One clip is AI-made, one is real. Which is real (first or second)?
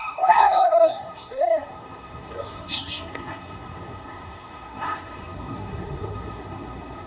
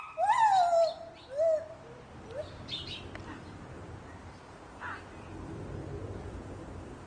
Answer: second